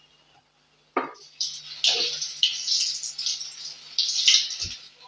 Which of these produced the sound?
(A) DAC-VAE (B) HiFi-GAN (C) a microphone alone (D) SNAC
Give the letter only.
C